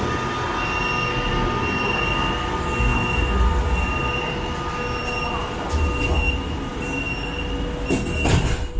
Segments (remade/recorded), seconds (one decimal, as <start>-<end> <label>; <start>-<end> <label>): 0.0-8.8 recorded